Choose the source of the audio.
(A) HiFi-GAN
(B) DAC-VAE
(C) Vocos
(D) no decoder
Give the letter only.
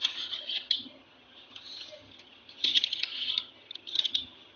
A